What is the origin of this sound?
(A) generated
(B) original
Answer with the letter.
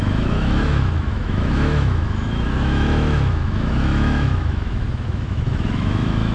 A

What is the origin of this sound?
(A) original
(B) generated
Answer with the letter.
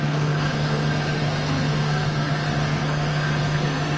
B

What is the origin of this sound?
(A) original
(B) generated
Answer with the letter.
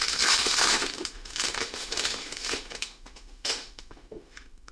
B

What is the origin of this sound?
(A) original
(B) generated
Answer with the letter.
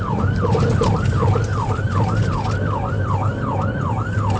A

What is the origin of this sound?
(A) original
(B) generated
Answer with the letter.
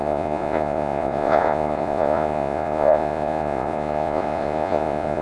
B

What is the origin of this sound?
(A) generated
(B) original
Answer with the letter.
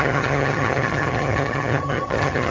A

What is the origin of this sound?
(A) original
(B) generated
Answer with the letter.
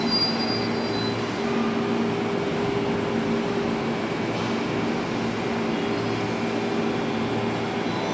A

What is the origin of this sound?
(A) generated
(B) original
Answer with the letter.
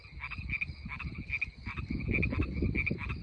B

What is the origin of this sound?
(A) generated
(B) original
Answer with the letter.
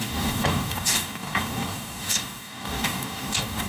A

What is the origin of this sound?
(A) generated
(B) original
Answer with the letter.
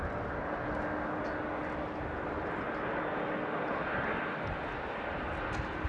B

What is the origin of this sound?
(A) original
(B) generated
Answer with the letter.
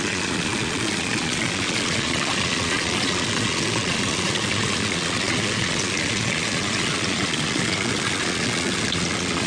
B